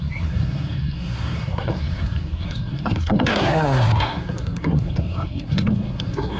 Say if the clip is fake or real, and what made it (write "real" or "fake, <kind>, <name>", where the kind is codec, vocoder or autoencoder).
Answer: fake, codec, SNAC